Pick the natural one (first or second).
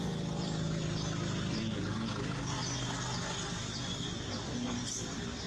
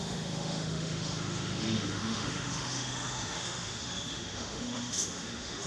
first